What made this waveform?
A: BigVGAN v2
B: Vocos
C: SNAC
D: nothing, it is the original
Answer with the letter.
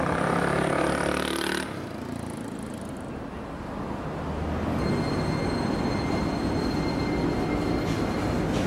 D